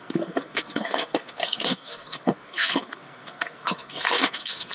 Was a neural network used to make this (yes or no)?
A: yes